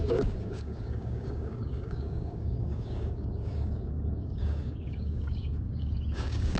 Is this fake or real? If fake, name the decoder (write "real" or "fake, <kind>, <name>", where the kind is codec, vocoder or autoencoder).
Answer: fake, codec, DAC